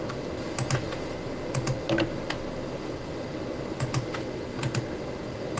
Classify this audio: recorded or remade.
recorded